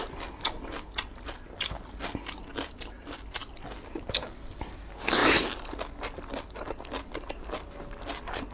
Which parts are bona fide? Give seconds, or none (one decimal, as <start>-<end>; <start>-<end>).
0.0-8.5